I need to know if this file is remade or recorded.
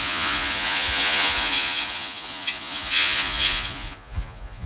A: remade